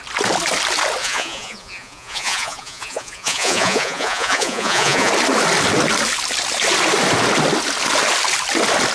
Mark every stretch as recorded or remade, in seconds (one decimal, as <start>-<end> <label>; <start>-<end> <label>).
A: 0.0-1.0 recorded; 1.0-5.1 remade; 5.1-8.9 recorded